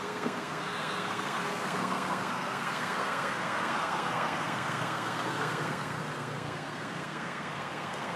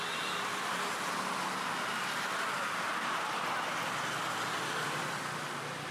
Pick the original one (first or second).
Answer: second